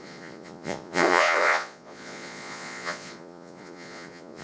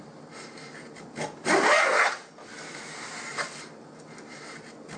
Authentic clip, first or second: second